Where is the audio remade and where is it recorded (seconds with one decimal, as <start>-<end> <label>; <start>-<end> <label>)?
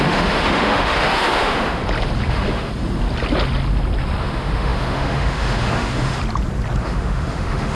0.0-1.8 remade; 1.8-2.3 recorded; 2.3-2.7 remade; 2.7-4.2 recorded; 4.2-6.2 remade; 6.2-6.8 recorded; 6.8-7.7 remade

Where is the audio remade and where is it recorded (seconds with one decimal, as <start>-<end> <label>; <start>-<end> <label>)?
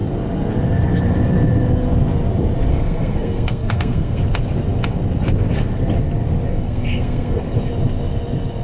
0.0-2.7 recorded; 2.7-4.2 remade; 4.2-6.5 recorded; 6.5-7.4 remade; 7.4-8.6 recorded